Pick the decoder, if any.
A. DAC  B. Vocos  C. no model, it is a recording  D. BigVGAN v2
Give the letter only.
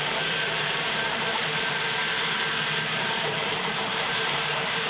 D